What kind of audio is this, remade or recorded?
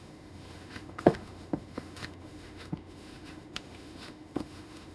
remade